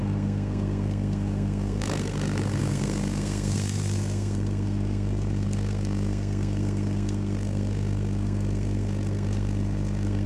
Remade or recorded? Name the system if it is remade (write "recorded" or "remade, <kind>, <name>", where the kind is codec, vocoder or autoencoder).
remade, codec, SNAC